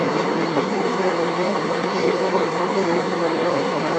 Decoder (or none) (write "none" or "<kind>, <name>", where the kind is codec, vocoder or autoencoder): codec, SNAC